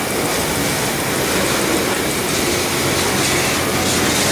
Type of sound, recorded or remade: recorded